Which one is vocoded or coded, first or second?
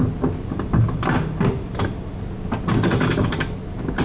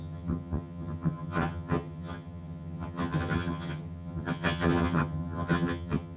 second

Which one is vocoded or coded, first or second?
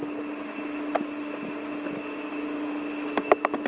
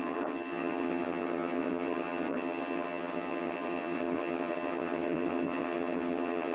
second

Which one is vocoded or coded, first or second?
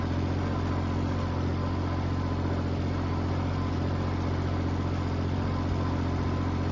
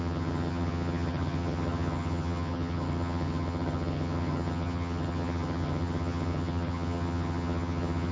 second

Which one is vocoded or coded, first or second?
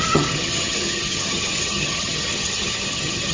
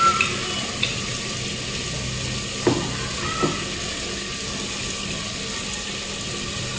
first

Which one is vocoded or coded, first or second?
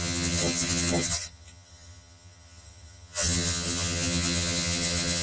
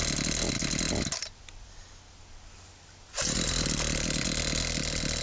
first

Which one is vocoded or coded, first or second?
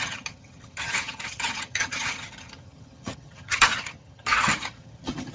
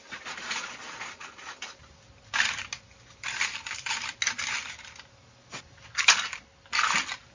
first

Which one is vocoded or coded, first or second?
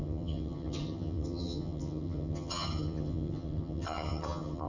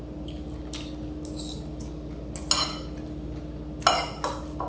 first